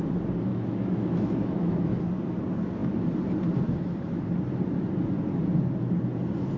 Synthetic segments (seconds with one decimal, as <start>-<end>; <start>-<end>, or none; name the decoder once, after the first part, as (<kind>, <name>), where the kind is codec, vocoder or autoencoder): 0.5-2.0 (autoencoder, DAC-VAE)